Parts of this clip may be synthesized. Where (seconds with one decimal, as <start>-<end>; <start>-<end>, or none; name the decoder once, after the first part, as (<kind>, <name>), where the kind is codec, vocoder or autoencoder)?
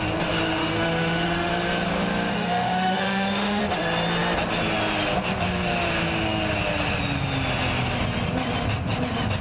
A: 0.6-1.5 (autoencoder, DAC-VAE); 2.3-3.6